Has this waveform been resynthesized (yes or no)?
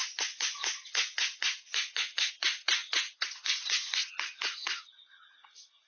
yes